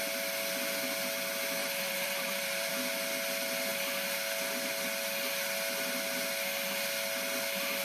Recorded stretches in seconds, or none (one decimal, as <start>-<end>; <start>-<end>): 0.0-1.6; 2.7-7.8

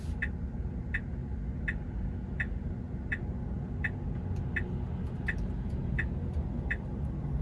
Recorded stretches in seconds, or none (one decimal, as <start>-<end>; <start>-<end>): 0.0-7.4

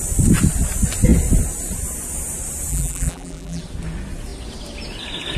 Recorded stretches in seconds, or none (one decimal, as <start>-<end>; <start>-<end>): 0.0-2.7; 3.6-5.4

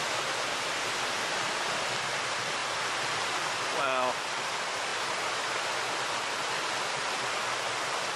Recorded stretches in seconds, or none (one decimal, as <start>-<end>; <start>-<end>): 0.0-8.2

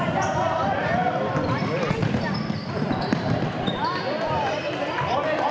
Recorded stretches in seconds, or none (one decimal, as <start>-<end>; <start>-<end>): 0.0-1.0; 4.3-5.5

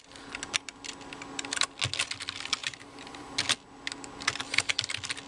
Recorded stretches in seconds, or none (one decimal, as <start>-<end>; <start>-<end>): 0.0-2.6; 3.2-5.3

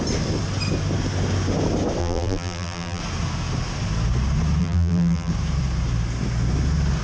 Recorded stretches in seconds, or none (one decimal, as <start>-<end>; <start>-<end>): 0.0-2.0; 3.0-4.6; 5.3-7.0

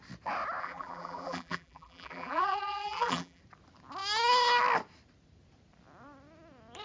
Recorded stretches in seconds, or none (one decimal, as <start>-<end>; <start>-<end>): 0.0-0.6; 3.4-6.8